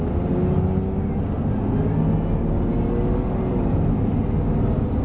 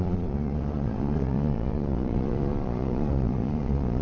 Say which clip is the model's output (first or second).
second